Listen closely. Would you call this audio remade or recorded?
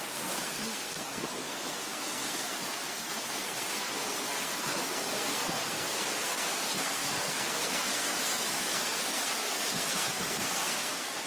remade